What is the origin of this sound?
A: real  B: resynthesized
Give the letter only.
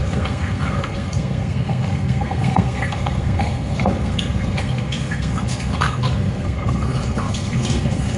B